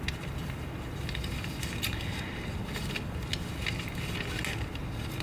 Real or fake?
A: real